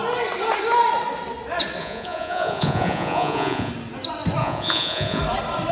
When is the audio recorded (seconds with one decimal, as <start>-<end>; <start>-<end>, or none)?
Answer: 0.0-1.8; 3.7-4.4; 5.2-5.7